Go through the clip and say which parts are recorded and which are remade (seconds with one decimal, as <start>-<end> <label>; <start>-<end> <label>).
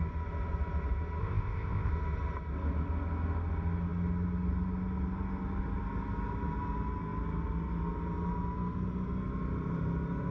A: 0.0-1.2 recorded; 1.2-1.9 remade; 1.9-10.3 recorded